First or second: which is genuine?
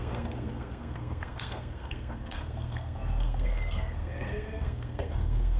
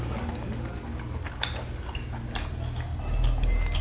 second